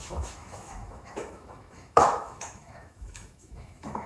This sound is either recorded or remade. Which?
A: remade